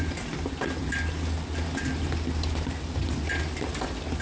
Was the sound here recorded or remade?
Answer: recorded